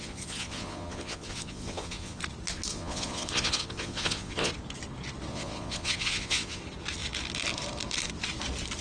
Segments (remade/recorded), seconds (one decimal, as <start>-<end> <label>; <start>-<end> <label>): 0.0-2.2 remade; 2.2-2.7 recorded; 2.7-4.5 remade; 4.5-5.3 recorded; 5.3-6.6 remade; 6.6-8.8 recorded